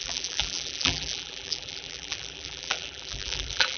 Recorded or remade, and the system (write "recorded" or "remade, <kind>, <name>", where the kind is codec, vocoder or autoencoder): remade, vocoder, BigVGAN v2